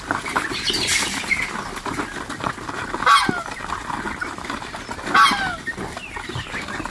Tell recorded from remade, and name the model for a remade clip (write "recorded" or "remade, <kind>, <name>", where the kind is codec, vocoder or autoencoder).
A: recorded